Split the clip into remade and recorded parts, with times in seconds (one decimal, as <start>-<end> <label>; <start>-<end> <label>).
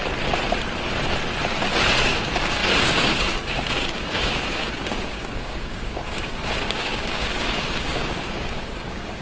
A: 0.0-2.0 recorded; 2.0-9.2 remade